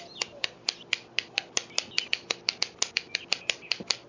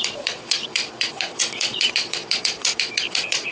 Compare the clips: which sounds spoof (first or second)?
second